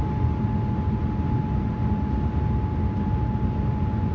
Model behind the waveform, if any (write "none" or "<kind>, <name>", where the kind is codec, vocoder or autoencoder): none